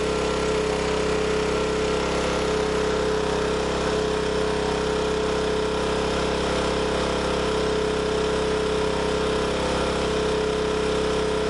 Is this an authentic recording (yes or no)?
yes